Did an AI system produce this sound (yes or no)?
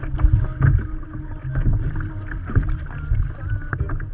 no